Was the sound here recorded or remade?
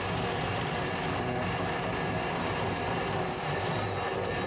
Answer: recorded